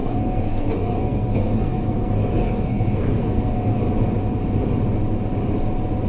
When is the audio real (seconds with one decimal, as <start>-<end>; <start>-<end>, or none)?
3.8-6.1